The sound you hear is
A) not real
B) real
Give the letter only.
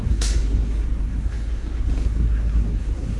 A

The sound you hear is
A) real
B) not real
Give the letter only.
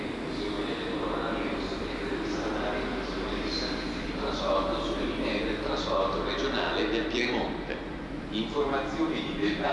A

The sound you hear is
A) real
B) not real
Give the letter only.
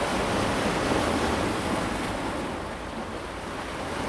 A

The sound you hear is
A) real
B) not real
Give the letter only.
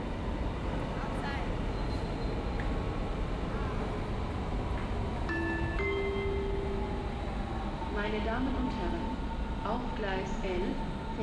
A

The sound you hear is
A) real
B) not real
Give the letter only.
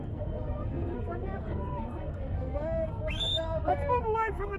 B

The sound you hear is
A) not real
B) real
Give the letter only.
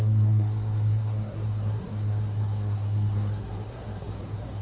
A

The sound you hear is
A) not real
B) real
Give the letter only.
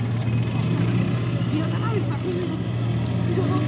B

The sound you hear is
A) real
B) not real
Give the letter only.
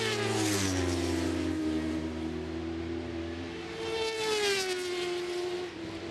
A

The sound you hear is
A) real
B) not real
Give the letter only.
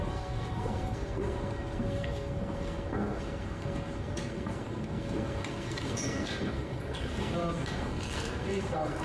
B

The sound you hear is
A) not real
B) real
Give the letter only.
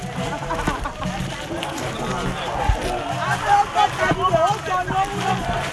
B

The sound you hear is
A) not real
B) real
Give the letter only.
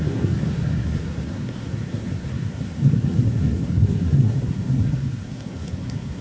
A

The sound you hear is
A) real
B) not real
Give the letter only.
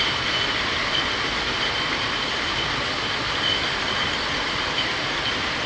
A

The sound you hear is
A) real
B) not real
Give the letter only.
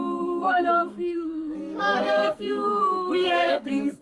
B